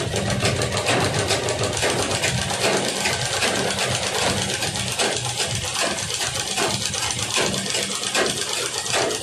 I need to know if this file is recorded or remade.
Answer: recorded